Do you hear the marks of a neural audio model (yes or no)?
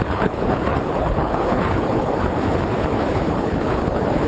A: yes